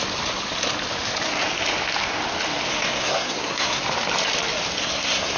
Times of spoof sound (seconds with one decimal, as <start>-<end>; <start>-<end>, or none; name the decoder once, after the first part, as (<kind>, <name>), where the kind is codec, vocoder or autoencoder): 2.7-3.8 (codec, SNAC); 4.8-5.4